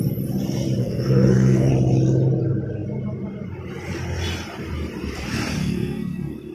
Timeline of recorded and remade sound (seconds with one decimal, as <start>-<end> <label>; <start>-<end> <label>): 0.0-0.8 recorded; 0.8-1.7 remade; 1.7-5.6 recorded; 5.6-6.5 remade